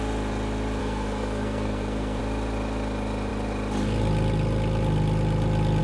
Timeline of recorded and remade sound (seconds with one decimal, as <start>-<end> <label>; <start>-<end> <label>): 0.0-0.8 recorded; 0.8-2.2 remade; 2.2-5.8 recorded